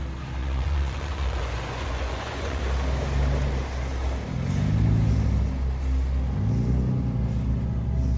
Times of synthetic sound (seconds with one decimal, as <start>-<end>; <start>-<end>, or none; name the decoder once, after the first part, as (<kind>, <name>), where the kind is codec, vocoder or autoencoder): 0.4-2.6 (vocoder, Vocos)